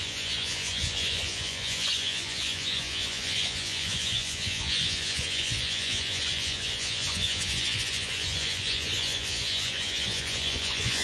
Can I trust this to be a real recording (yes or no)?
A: no